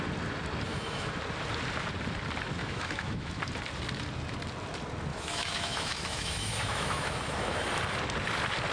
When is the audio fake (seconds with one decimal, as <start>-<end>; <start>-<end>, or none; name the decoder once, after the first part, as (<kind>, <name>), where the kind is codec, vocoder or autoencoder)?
0.7-1.2 (autoencoder, DAC-VAE); 2.6-3.4; 5.1-7.7